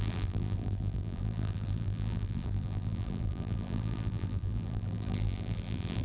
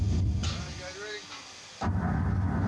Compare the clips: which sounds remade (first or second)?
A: first